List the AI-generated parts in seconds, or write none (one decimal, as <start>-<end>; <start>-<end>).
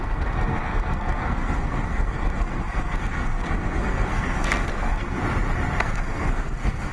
0.0-5.2; 5.8-6.9